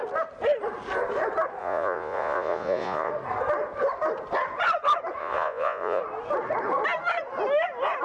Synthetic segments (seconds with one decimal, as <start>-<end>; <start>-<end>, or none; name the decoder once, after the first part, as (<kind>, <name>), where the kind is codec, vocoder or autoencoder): 1.6-3.1 (vocoder, Vocos); 5.2-6.0